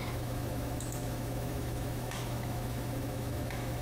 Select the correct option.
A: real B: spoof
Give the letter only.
B